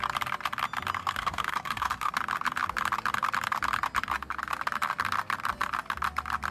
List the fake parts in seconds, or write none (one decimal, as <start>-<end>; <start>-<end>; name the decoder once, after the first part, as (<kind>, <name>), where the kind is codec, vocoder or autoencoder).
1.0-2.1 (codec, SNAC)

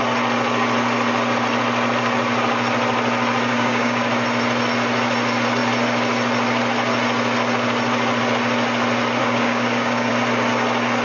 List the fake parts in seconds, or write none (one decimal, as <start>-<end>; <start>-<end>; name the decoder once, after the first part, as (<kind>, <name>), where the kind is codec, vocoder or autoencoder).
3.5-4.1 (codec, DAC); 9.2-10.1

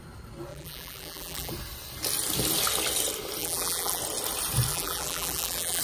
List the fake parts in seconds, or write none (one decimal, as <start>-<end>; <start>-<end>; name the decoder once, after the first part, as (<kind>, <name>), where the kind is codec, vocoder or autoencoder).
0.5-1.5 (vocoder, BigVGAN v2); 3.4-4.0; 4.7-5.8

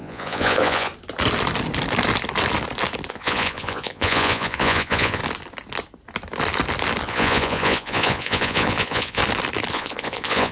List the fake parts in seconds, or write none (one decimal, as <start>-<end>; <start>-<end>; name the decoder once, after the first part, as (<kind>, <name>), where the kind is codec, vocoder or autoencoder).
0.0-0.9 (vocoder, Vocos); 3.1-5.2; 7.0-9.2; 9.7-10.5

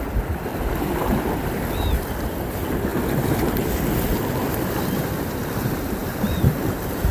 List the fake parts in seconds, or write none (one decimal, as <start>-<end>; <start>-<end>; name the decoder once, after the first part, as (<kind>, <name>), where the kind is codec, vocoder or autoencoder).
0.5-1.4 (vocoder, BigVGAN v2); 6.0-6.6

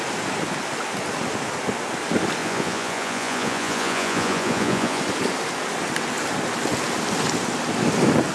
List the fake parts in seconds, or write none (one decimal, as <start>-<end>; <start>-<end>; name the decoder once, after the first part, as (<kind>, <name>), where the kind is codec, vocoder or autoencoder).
2.4-5.0 (vocoder, Vocos)

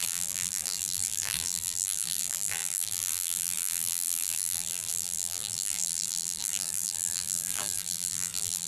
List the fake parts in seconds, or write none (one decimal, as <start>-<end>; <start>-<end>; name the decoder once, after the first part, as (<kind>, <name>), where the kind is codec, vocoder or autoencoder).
0.0-8.7 (vocoder, BigVGAN v2)